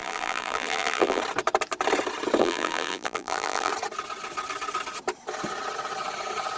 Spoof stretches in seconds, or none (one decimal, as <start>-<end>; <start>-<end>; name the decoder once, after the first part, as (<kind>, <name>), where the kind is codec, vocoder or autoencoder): 0.0-1.2 (vocoder, BigVGAN v2); 2.4-3.7